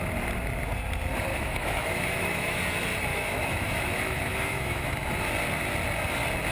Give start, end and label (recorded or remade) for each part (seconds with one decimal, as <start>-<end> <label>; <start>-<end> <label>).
0.0-1.3 recorded; 1.3-2.6 remade; 2.6-3.1 recorded; 3.1-5.1 remade; 5.1-6.5 recorded